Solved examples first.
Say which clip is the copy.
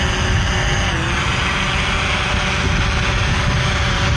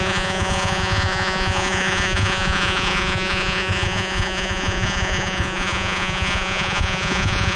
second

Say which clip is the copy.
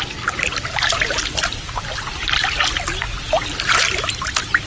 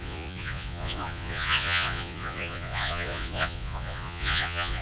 second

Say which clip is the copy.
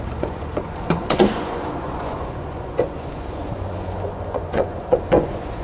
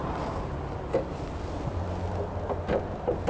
first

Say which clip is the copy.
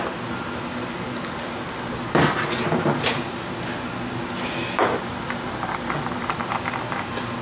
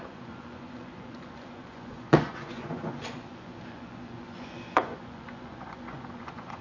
second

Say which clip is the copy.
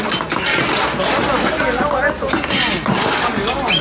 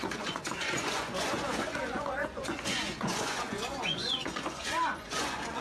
second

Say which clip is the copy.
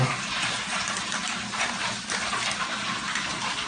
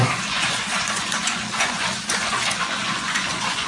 second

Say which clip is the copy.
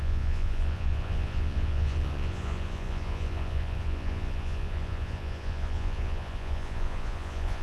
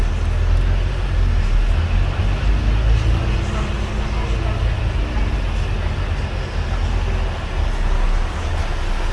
first